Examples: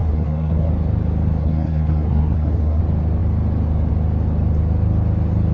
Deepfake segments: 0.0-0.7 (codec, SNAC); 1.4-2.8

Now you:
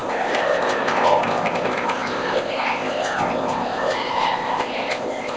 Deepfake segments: 0.0-5.4 (codec, ZipCodec)

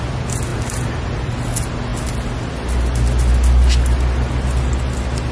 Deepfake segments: none

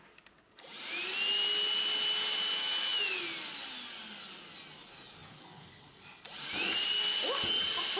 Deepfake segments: 2.6-3.2 (autoencoder, DAC-VAE)

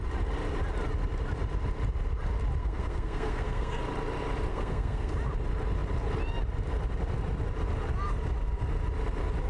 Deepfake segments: 2.6-3.8 (codec, SNAC); 4.5-5.1